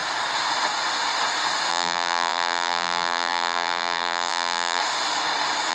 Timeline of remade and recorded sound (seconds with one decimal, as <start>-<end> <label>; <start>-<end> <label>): 0.0-1.7 recorded; 1.7-4.8 remade; 4.8-5.7 recorded